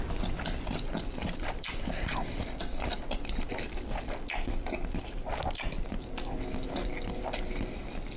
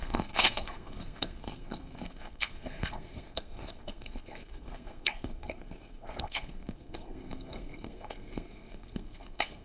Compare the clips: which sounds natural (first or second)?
first